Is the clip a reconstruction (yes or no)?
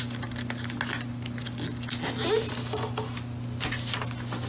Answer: no